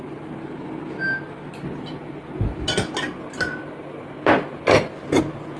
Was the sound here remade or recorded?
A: recorded